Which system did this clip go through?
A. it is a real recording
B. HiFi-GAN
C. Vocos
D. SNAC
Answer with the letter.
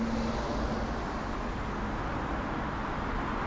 A